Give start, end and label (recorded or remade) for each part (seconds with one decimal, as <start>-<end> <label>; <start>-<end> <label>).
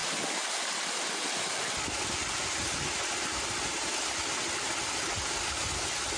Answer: 0.0-6.2 recorded